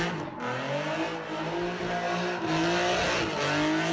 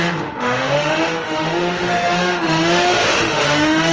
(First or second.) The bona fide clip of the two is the first